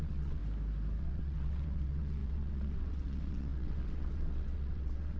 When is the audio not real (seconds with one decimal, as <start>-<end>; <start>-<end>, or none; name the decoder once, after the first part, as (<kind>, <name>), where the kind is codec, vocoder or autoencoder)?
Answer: 0.0-0.4 (vocoder, WaveNeXt); 1.0-5.2